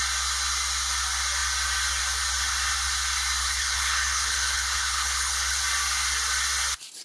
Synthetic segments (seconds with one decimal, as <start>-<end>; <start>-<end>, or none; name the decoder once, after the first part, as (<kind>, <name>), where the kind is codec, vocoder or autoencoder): 3.4-5.6 (codec, HILCodec)